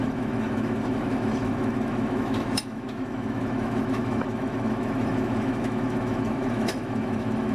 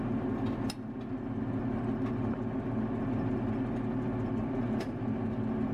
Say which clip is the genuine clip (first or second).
second